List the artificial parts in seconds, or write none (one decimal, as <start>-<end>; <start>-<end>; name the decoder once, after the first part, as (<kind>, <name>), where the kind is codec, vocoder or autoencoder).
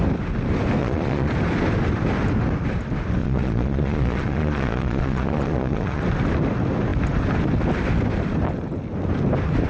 0.8-1.3 (vocoder, Vocos); 3.2-6.0